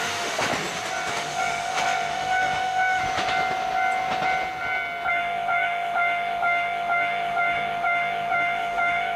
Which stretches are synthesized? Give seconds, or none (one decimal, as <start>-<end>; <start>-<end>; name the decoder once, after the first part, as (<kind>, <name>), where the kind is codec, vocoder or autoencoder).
0.0-0.5 (autoencoder, DAC-VAE); 1.1-3.0; 5.1-9.2